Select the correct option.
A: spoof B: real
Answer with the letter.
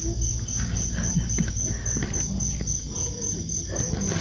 B